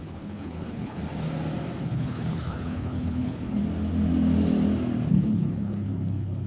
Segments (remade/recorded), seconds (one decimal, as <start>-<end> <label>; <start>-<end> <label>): 0.0-1.0 remade; 1.0-1.8 recorded; 1.8-3.6 remade; 3.6-5.1 recorded; 5.1-6.5 remade